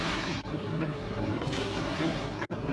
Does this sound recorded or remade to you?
remade